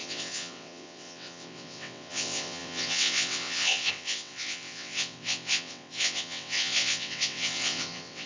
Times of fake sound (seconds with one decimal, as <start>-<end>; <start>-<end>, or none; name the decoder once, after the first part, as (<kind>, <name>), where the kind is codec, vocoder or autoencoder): 0.0-8.3 (vocoder, WaveNeXt)